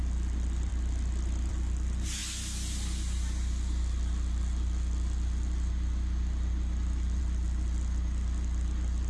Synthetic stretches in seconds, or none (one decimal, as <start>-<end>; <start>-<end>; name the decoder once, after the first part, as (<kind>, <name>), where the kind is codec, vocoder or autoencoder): none